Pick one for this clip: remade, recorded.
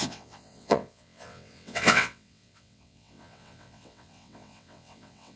remade